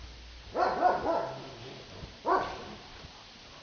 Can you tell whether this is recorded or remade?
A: recorded